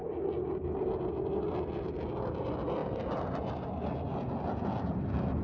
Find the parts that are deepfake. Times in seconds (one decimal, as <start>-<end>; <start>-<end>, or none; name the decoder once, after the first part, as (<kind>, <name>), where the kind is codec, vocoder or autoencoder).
none